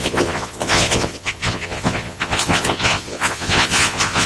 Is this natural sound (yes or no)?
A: no